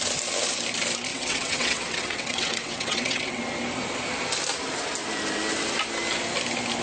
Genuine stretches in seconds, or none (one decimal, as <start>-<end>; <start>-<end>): 0.0-1.1; 3.4-6.8